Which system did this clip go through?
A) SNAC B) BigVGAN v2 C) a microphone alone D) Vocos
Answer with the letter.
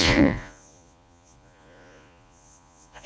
D